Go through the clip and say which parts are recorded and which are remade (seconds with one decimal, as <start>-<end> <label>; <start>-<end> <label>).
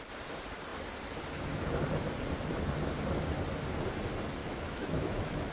0.0-4.4 recorded; 4.4-5.5 remade